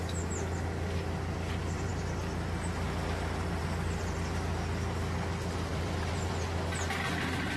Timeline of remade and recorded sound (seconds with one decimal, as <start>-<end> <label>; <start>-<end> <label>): 0.0-5.7 recorded; 5.7-6.3 remade; 6.3-7.6 recorded